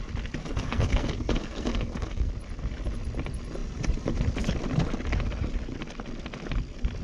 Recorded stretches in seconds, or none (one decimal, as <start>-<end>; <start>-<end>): 0.0-0.4; 2.3-7.0